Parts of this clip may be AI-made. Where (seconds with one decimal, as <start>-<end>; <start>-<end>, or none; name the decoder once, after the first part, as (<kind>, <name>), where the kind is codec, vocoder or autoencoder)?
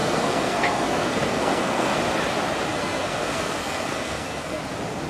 0.0-2.0 (codec, SNAC); 2.7-4.6